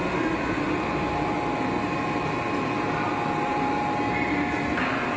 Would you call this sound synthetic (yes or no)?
no